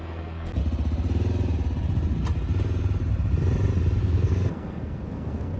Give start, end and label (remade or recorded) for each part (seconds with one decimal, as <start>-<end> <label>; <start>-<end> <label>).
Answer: 0.0-0.6 remade; 0.6-4.0 recorded; 4.0-5.6 remade